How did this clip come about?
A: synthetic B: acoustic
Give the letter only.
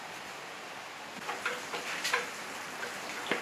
B